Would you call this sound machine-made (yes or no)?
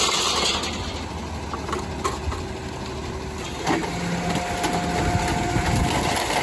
no